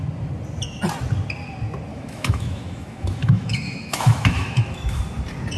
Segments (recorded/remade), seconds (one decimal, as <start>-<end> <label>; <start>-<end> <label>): 0.0-1.9 recorded; 1.9-5.0 remade; 5.0-5.6 recorded